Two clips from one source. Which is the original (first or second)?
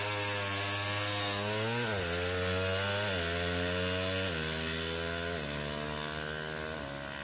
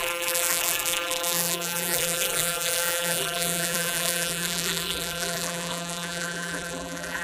first